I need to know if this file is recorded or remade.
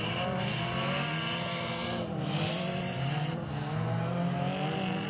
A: recorded